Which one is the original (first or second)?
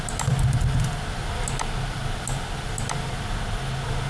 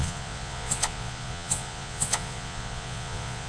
first